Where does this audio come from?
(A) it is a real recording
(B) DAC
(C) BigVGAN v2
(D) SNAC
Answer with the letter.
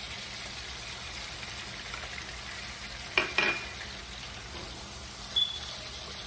A